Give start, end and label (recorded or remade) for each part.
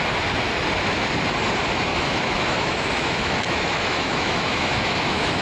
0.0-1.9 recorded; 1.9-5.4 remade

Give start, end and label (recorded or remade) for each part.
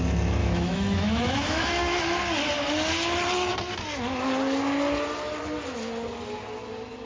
0.0-0.4 recorded; 0.4-2.0 remade; 2.0-7.1 recorded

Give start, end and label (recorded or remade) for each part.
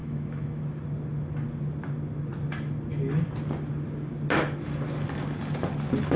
0.0-0.6 remade; 0.6-6.2 recorded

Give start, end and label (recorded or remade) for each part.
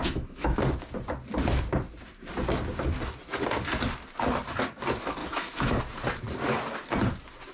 0.0-0.7 remade; 0.7-5.2 recorded; 5.2-5.8 remade; 5.8-7.5 recorded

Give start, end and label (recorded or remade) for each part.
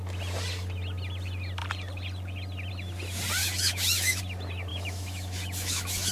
0.0-3.4 recorded; 3.4-4.2 remade; 4.2-4.7 recorded; 4.7-6.1 remade